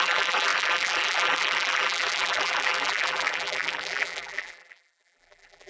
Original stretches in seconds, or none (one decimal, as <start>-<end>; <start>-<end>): none